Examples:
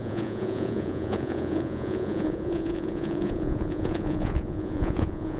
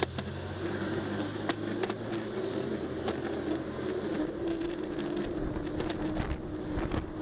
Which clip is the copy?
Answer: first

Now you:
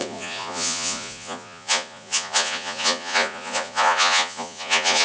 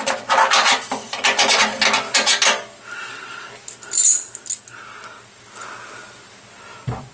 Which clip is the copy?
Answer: first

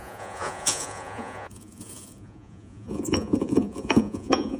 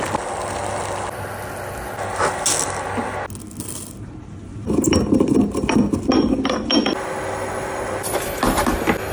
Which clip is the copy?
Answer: first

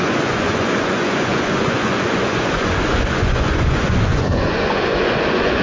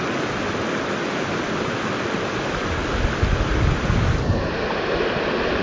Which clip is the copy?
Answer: first